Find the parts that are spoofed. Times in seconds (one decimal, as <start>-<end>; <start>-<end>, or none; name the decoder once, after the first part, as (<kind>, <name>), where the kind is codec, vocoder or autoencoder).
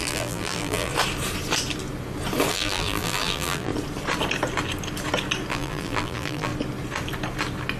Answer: 0.0-0.9 (vocoder, BigVGAN v2); 2.5-3.7; 5.5-6.5